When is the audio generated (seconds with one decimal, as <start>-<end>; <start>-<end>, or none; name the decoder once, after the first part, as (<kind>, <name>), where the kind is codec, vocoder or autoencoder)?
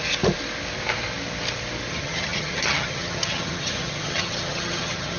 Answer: 1.9-5.2 (vocoder, HiFi-GAN)